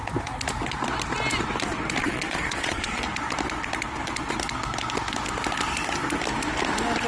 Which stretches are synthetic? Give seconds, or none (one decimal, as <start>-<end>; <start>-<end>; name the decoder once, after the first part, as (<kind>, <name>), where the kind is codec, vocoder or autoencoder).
2.0-3.0 (vocoder, Vocos)